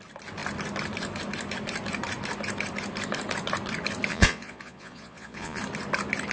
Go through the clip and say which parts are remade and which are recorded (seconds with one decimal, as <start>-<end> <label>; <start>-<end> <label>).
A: 0.0-4.1 recorded; 4.1-5.6 remade; 5.6-6.3 recorded